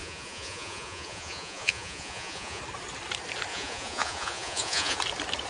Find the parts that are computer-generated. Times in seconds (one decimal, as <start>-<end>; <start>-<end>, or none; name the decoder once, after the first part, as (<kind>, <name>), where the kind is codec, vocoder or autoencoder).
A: 0.0-2.6 (vocoder, Vocos); 3.5-5.0